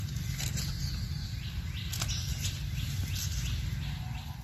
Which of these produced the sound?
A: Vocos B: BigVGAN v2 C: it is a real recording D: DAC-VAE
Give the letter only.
C